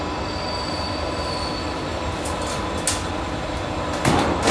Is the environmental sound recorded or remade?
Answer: recorded